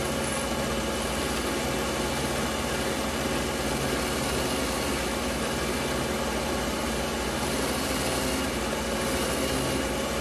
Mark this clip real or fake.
real